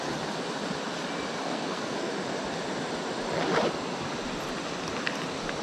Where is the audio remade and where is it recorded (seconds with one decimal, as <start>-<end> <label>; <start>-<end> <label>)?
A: 0.0-1.4 recorded; 1.4-2.1 remade; 2.1-5.6 recorded